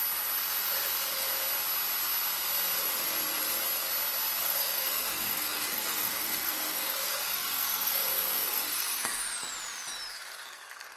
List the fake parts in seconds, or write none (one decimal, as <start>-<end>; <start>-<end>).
4.4-9.2; 10.1-11.0